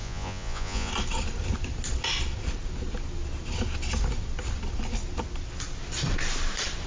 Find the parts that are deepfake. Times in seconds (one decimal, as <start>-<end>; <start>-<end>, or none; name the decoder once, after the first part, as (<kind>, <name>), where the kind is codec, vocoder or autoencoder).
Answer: 0.0-0.9 (vocoder, Vocos)